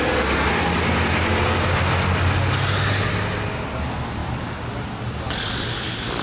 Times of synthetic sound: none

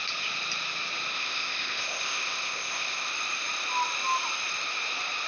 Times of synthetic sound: 1.1-3.1 (codec, ZipCodec)

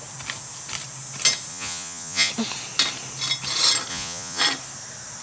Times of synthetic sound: 1.5-2.3 (vocoder, Vocos); 3.9-4.4

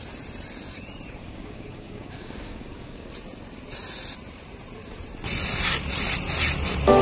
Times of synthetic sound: 1.2-3.1 (codec, DAC)

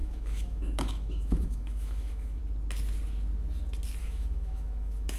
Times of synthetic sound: 0.0-2.4 (autoencoder, DAC-VAE); 4.0-5.2

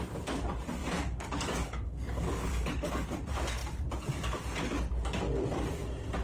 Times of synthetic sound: 0.8-2.9 (codec, DAC)